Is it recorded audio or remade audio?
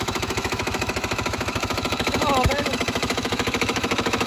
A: remade